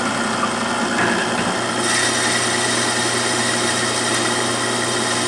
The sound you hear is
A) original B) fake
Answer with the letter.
A